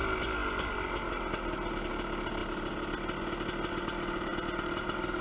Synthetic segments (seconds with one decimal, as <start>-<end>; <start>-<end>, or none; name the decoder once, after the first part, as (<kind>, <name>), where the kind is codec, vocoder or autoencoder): none